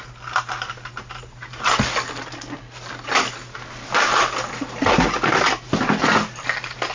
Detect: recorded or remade recorded